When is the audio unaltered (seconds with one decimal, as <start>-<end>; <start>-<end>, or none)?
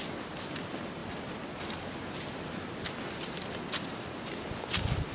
0.0-1.0; 4.0-5.1